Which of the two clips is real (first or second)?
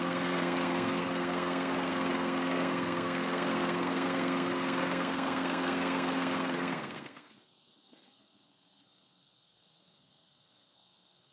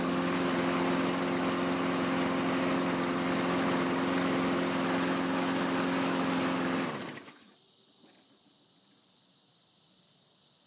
second